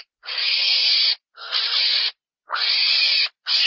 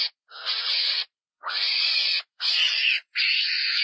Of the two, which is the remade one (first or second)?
second